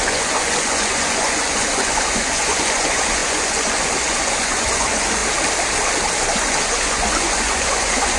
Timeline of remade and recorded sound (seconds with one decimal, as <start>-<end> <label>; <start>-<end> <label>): 0.0-5.2 remade; 5.2-6.2 recorded; 6.2-8.2 remade

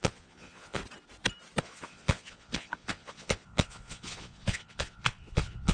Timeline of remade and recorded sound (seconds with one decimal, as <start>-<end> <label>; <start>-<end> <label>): 0.0-0.8 remade; 0.8-1.6 recorded; 1.6-5.7 remade

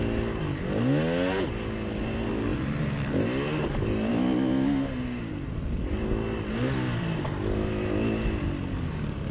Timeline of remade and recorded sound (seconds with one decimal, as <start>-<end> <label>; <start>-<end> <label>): 0.0-9.3 recorded

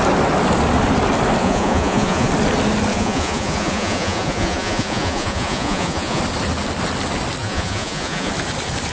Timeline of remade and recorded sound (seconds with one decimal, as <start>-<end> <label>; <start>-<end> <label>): 0.0-1.4 recorded; 1.4-2.3 remade; 2.3-2.9 recorded; 2.9-6.2 remade; 6.2-7.4 recorded; 7.4-8.3 remade; 8.3-8.9 recorded

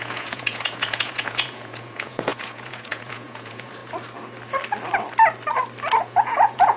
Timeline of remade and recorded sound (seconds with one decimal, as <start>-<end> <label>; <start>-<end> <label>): 0.0-3.8 remade; 3.8-6.0 recorded; 6.0-6.8 remade

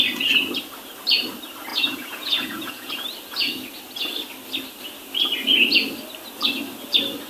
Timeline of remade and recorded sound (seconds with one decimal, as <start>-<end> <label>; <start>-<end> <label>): 0.0-1.7 recorded; 1.7-2.9 remade; 2.9-7.3 recorded

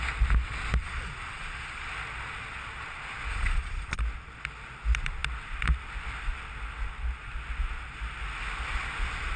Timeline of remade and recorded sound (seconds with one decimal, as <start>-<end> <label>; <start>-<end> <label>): 0.0-0.8 recorded; 0.8-1.9 remade; 1.9-3.3 recorded; 3.3-4.0 remade; 4.0-9.4 recorded

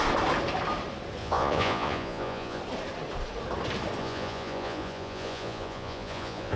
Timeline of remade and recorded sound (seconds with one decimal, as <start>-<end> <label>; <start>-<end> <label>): 0.0-1.2 recorded; 1.2-2.6 remade; 2.6-4.0 recorded; 4.0-6.6 remade